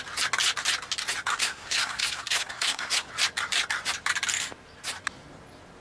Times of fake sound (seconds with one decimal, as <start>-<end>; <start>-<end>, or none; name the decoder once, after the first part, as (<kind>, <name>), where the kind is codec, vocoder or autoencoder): 1.3-3.1 (codec, SNAC)